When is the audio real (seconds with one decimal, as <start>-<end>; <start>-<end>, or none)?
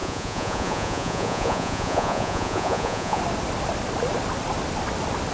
3.2-5.3